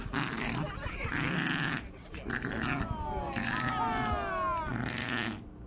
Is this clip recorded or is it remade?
recorded